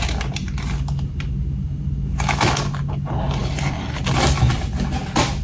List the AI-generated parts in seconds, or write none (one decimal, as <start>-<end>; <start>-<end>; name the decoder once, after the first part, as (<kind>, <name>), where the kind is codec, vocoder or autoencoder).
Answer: none